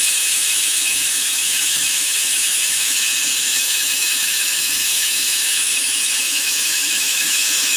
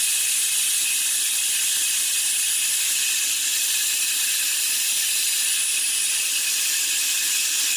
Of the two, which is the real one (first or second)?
second